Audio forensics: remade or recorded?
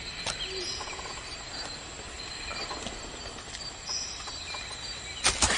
recorded